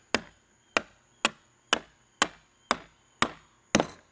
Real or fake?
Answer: real